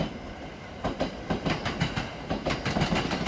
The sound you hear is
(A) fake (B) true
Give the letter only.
B